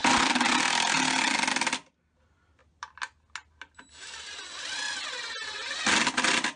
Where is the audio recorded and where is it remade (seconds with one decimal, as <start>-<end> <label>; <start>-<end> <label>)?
0.0-6.6 recorded